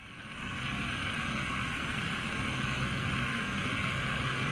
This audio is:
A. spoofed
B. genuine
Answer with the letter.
A